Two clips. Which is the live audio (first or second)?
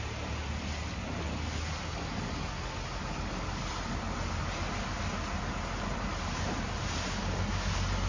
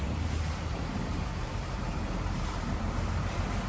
first